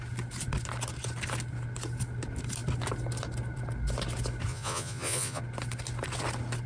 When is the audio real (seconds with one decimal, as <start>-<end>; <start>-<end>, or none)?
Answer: 0.0-4.5; 5.4-6.7